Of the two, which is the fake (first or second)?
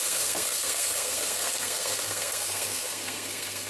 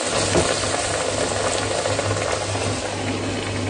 first